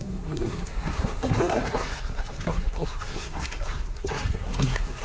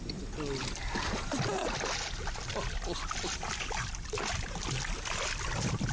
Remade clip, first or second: first